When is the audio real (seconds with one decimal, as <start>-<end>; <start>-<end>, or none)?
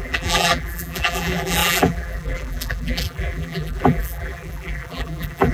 none